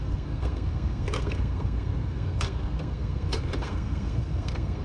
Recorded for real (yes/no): no